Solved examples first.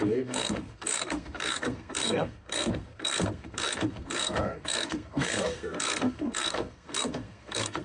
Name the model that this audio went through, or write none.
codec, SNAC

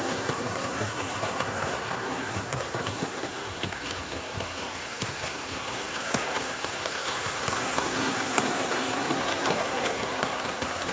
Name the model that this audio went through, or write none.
codec, SNAC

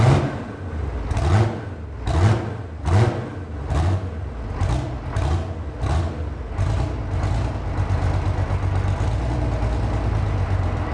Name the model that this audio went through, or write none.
none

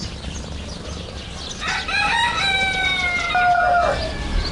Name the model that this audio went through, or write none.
none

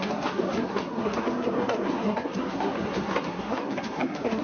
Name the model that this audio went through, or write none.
codec, SNAC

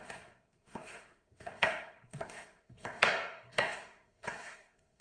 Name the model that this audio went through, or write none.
codec, SNAC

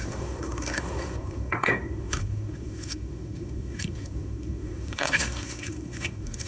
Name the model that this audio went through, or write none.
codec, SNAC